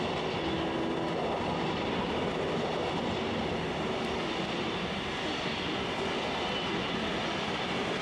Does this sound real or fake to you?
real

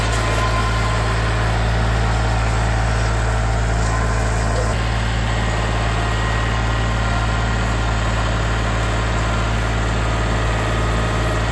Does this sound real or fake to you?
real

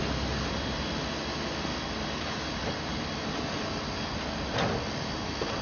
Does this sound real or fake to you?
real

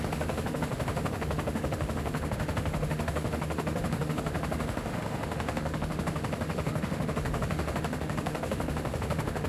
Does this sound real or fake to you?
fake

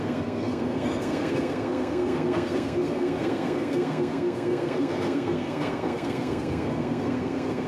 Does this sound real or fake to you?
fake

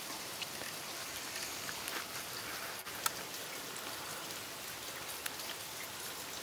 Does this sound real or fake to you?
real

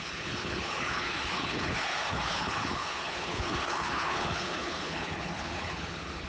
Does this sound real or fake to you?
fake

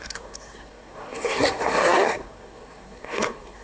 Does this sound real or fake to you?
fake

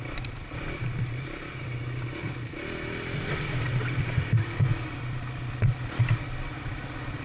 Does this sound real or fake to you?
fake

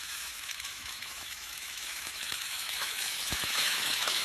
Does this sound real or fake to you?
fake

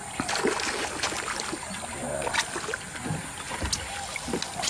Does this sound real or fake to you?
real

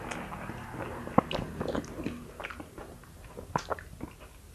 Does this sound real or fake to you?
real